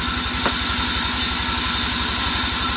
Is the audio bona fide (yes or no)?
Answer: yes